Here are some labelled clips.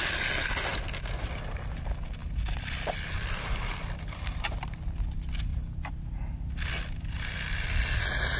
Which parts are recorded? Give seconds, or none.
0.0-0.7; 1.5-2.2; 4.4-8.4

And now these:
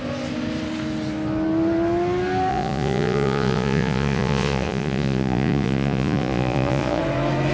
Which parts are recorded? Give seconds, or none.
0.0-2.5; 7.0-7.5

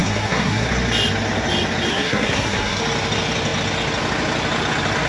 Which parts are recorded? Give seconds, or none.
0.7-1.9; 2.8-5.1

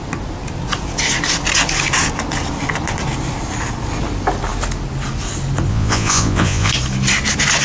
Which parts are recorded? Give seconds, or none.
0.0-5.7; 6.7-7.6

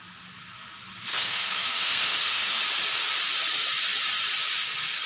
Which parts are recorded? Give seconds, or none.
0.0-1.1; 2.6-5.1

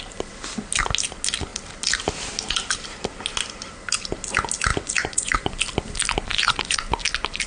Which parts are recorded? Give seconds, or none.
0.0-4.7; 5.5-6.3; 6.8-7.5

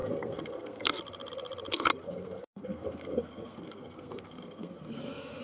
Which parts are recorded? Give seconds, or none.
1.0-2.0

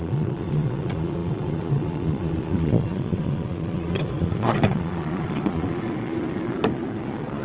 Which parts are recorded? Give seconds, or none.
none